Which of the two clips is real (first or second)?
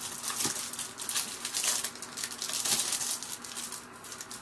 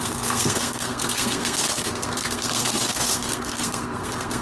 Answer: first